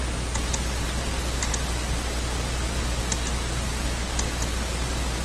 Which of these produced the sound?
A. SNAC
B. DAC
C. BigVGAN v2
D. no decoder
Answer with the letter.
D